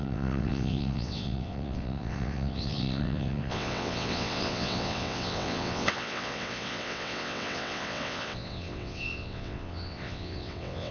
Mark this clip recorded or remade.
remade